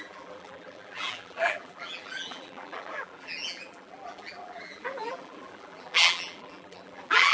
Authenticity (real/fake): fake